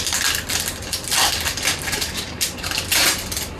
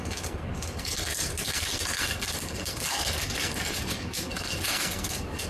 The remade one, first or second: second